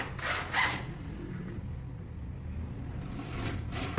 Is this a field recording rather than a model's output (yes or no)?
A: yes